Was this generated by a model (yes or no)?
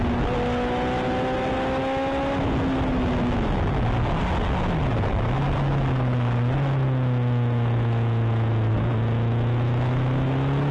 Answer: no